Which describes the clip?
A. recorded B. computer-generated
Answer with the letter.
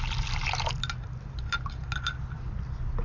A